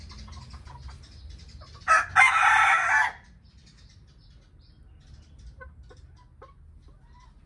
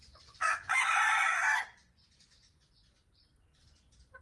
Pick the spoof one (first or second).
second